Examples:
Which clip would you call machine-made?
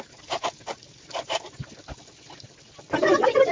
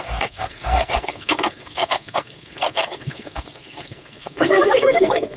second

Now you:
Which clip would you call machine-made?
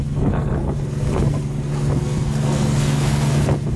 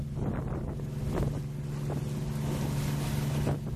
first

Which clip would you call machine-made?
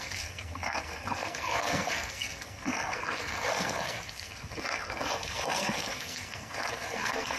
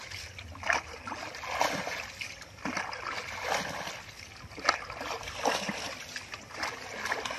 first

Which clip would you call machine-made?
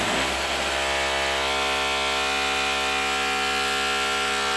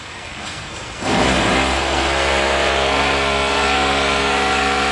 second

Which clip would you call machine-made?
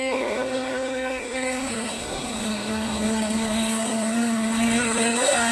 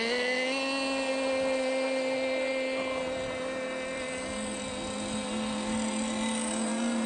first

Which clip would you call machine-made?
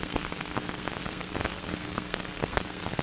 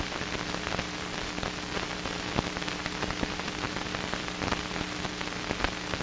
first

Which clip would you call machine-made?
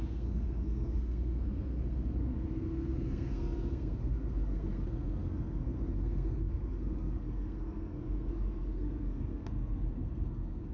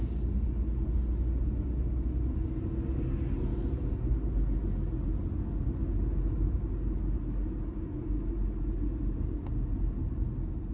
first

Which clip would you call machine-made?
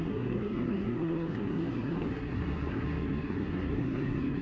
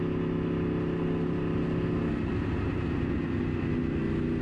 first